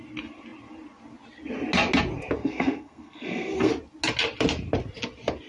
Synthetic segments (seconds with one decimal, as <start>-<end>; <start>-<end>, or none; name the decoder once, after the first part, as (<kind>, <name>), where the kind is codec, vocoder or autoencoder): 2.4-3.7 (codec, SNAC)